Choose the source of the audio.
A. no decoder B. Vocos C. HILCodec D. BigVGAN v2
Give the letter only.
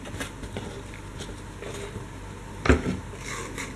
A